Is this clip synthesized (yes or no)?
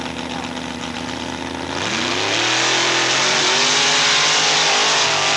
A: no